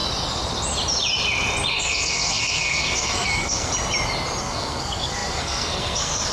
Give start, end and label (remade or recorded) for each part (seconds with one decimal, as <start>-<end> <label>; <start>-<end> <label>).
0.0-1.7 recorded; 1.7-3.7 remade; 3.7-4.4 recorded; 4.4-6.3 remade